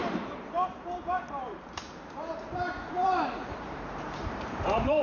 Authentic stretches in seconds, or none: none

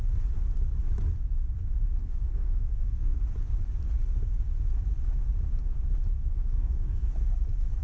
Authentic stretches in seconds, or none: 0.0-2.0; 3.2-6.3; 7.1-7.8

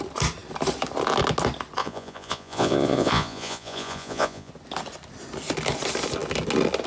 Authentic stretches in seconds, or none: 0.0-1.8; 4.5-6.9

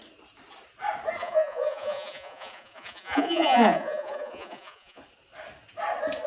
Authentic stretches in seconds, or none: 0.0-1.2; 5.0-6.3